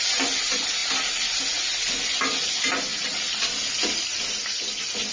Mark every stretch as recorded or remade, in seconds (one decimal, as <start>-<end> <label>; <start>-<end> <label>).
0.0-5.1 recorded